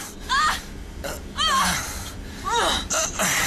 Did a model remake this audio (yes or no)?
yes